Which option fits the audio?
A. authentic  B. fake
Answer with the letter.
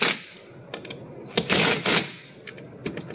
A